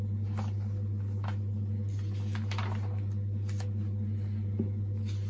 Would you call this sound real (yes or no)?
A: yes